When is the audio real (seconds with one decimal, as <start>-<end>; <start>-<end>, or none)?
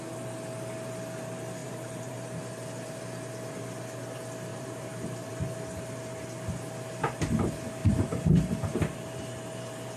0.0-1.6; 2.4-4.5; 5.3-7.8; 8.8-10.0